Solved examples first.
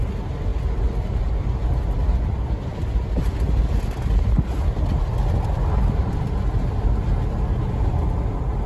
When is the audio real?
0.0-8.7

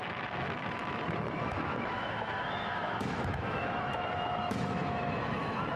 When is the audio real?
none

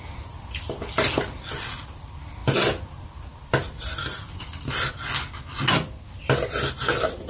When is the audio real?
0.0-7.3

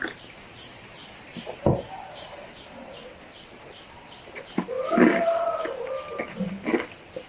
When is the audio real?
4.4-7.3

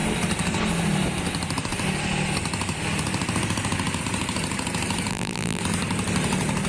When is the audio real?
0.0-5.1; 5.6-6.7